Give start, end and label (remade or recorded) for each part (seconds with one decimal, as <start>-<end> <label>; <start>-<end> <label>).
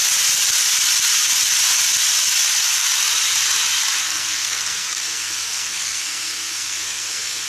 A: 0.0-4.0 recorded; 4.0-7.5 remade